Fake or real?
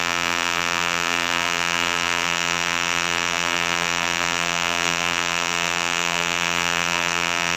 fake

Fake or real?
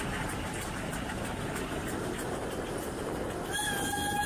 real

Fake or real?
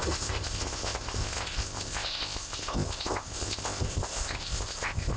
fake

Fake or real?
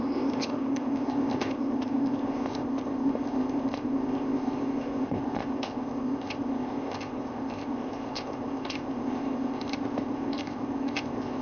fake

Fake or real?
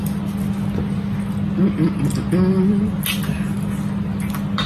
real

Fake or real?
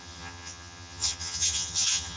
fake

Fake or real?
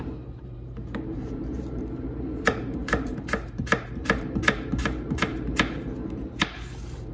fake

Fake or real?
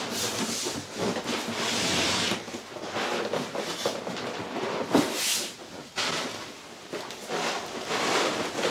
real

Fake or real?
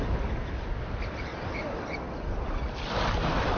real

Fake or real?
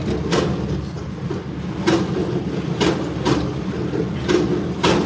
real